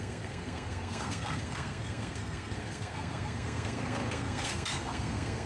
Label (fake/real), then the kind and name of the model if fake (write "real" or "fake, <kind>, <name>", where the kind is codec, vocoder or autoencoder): fake, codec, SNAC